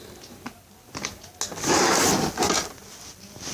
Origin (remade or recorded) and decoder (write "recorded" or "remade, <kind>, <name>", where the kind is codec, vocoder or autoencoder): recorded